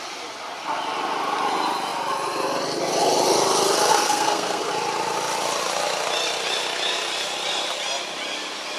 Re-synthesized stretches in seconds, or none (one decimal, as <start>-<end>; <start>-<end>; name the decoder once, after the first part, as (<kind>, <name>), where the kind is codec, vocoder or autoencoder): 3.9-4.7 (codec, SNAC)

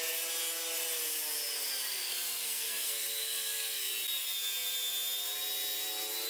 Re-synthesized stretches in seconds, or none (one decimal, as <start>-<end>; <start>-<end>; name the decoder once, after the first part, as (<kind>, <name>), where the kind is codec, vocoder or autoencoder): 1.9-3.9 (codec, SNAC)

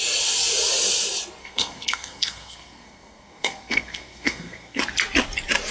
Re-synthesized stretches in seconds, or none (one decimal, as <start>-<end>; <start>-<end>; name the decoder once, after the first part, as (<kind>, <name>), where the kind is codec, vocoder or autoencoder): 1.4-4.8 (codec, SNAC)

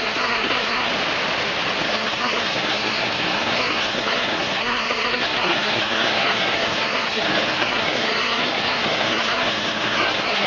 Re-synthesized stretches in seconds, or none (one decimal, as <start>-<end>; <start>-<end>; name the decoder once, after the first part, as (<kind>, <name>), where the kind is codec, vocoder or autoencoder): 0.0-0.9 (codec, SNAC); 1.8-10.5

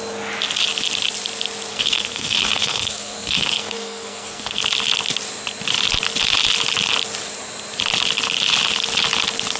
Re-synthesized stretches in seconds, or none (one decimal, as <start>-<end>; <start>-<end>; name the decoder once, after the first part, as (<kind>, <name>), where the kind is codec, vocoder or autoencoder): 1.7-4.6 (codec, SNAC)

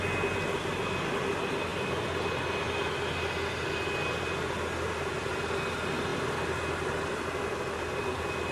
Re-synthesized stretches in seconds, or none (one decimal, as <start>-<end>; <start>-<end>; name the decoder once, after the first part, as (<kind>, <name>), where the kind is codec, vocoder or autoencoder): none

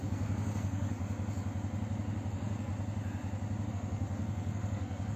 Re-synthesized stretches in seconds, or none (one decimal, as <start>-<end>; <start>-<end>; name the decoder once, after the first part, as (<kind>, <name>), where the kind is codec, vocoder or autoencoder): 0.0-1.0 (codec, SNAC); 2.3-2.7; 3.7-5.2

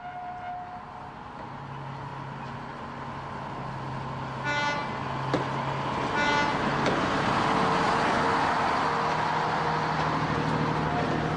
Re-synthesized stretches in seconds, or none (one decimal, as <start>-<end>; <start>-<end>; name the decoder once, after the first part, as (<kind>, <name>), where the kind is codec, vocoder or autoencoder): none